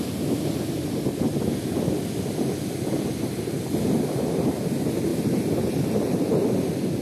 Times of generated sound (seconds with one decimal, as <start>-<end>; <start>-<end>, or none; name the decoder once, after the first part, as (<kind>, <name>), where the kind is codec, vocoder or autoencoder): 5.1-6.5 (vocoder, BigVGAN v2)